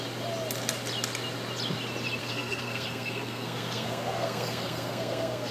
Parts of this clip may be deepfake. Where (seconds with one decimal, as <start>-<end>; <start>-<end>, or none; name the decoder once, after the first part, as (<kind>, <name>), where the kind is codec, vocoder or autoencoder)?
2.2-5.5 (codec, SNAC)